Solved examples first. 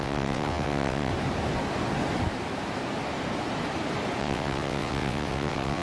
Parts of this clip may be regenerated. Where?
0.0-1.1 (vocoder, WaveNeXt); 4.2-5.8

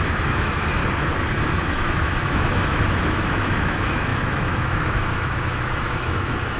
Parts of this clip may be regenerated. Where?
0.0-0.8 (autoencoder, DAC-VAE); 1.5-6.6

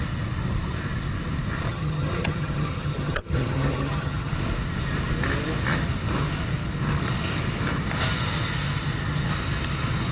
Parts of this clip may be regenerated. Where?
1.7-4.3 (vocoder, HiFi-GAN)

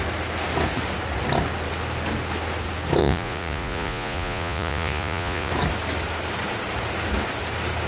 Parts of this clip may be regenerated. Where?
3.0-5.5 (vocoder, Vocos)